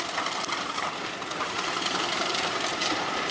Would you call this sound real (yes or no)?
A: no